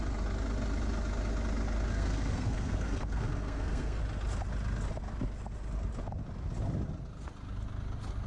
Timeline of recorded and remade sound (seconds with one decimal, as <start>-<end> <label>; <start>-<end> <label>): 0.0-1.9 recorded; 1.9-4.0 remade; 4.0-8.3 recorded

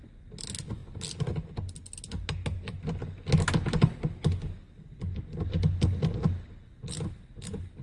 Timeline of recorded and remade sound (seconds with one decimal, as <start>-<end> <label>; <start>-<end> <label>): 0.0-7.8 recorded

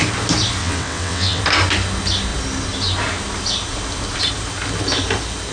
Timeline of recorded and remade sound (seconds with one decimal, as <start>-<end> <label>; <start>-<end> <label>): 0.0-0.6 recorded; 0.6-1.4 remade; 1.4-5.5 recorded

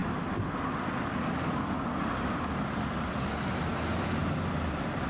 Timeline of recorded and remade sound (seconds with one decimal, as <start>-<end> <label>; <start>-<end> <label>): 0.0-5.1 recorded

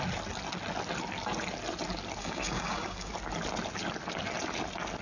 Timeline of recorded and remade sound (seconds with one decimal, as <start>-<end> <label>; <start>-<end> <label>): 0.0-2.2 recorded; 2.2-3.1 remade; 3.1-5.0 recorded